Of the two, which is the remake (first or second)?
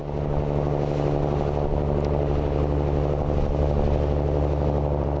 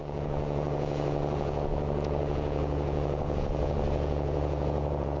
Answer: second